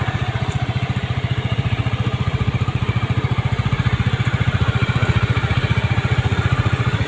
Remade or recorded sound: remade